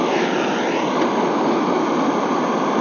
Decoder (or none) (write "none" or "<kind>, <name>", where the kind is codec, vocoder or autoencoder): none